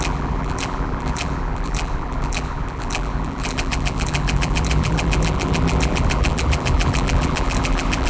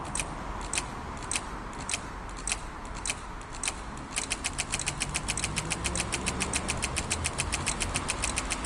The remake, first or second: first